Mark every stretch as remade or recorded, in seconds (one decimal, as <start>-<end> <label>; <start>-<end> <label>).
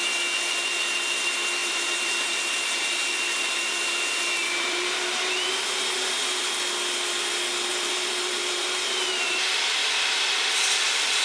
0.0-1.6 recorded; 1.6-6.5 remade; 6.5-7.7 recorded; 7.7-11.2 remade